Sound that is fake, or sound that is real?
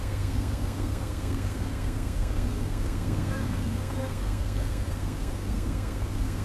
fake